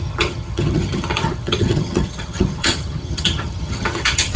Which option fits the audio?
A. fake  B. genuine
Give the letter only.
A